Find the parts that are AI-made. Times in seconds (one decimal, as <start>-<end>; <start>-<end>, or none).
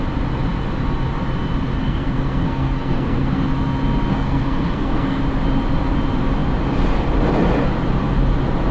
1.8-3.4; 4.1-5.2